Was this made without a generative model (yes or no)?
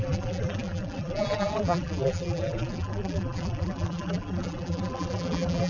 no